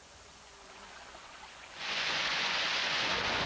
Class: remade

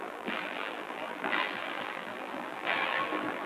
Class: remade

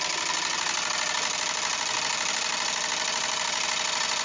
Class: recorded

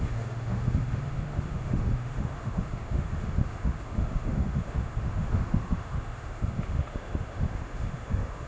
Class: remade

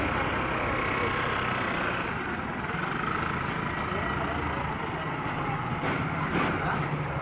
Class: recorded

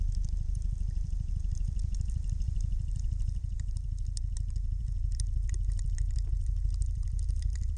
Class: remade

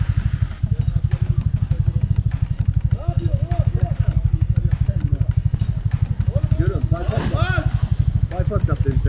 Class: recorded